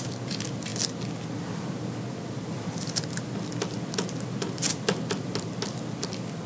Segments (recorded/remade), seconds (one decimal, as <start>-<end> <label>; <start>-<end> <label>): 0.0-6.5 recorded